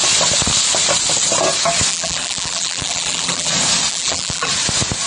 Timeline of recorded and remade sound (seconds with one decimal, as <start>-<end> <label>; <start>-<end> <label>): 0.0-1.9 recorded; 1.9-3.5 remade; 3.5-3.9 recorded; 3.9-4.5 remade; 4.5-5.1 recorded